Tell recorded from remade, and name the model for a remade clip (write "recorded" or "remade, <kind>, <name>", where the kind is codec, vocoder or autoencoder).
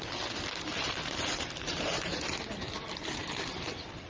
remade, vocoder, BigVGAN v2